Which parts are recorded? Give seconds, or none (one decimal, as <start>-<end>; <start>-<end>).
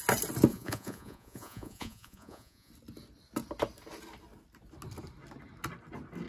0.0-0.5; 2.7-6.3